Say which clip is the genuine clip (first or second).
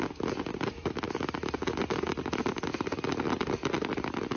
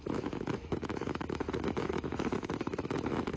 first